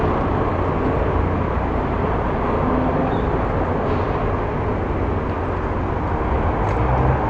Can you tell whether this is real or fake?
real